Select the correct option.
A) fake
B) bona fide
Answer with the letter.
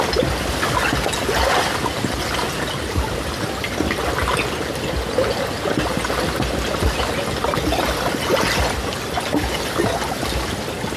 B